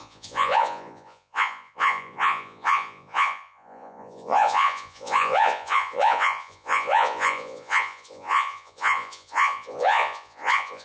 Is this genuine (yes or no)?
no